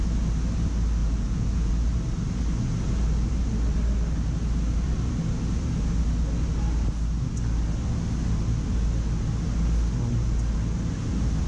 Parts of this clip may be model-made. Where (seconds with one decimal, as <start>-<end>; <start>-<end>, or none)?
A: 1.0-1.7